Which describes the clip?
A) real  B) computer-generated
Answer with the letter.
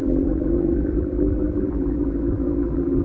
B